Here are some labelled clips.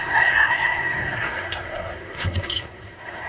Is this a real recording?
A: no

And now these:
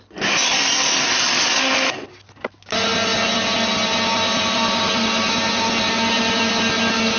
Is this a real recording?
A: yes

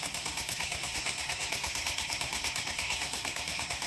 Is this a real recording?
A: no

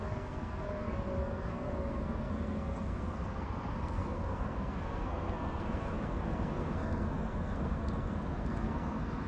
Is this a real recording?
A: no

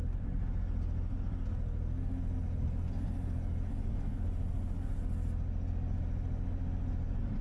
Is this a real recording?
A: yes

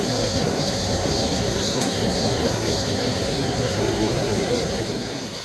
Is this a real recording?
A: no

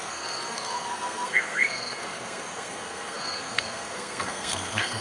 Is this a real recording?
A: no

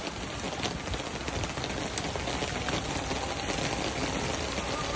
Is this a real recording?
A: yes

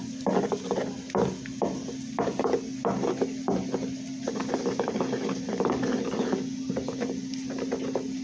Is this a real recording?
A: yes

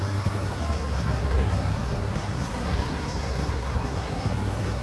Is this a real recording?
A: no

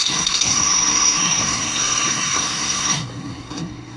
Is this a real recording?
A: no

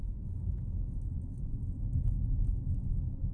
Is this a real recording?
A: yes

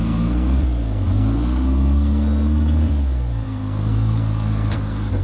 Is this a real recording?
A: no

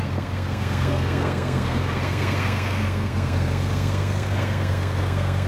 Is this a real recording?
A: no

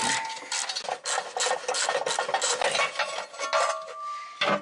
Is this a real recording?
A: yes